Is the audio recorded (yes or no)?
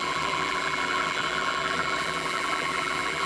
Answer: no